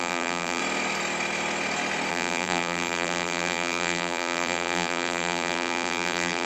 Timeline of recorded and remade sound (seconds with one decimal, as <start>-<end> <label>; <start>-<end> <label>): 0.0-0.6 remade; 0.6-2.1 recorded; 2.1-6.5 remade